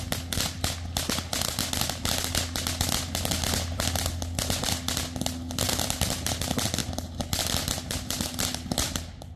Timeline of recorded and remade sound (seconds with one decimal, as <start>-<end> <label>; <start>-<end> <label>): 0.0-9.4 recorded